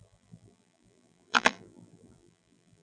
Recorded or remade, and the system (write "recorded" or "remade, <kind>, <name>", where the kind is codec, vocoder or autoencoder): remade, vocoder, BigVGAN v2